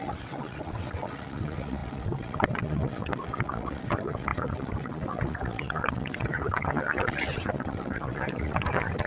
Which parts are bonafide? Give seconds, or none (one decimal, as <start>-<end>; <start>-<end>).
none